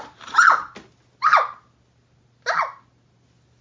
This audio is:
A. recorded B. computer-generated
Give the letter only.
A